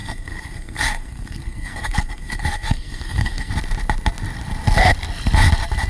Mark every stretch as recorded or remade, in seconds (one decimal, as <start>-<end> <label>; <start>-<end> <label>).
0.0-3.5 remade; 3.5-5.9 recorded